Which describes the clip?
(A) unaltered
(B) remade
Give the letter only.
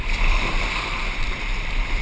B